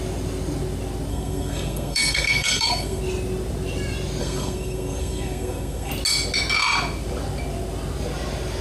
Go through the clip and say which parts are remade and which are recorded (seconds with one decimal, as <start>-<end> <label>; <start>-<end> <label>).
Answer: 0.0-1.1 recorded; 1.1-3.0 remade; 3.0-4.2 recorded; 4.2-5.9 remade; 5.9-8.6 recorded